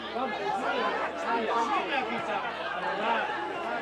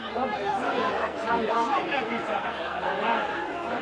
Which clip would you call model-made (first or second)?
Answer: second